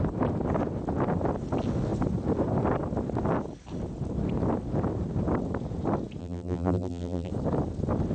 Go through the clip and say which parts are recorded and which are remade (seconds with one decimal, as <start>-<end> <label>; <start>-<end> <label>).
0.0-6.2 recorded; 6.2-7.3 remade; 7.3-8.1 recorded